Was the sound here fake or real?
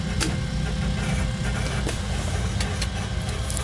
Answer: real